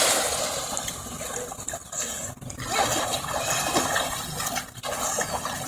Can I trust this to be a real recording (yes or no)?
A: yes